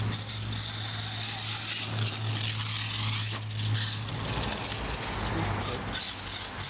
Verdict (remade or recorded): recorded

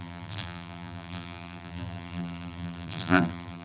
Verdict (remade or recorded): remade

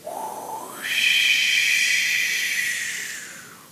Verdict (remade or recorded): recorded